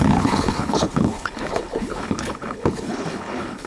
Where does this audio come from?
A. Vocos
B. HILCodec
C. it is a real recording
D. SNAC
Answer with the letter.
B